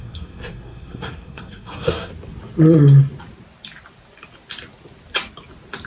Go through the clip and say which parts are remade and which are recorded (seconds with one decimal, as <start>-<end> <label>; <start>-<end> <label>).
0.0-2.1 remade; 2.1-5.9 recorded